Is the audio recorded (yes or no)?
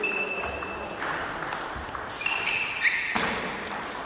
yes